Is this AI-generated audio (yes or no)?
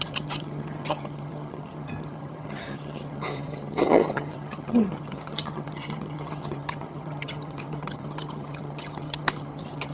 yes